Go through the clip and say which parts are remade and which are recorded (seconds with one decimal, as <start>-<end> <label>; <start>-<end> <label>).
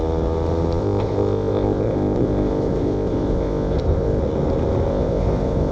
0.0-0.8 recorded; 0.8-4.2 remade; 4.2-4.9 recorded; 4.9-5.7 remade